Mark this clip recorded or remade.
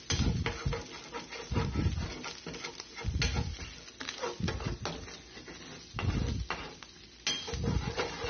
recorded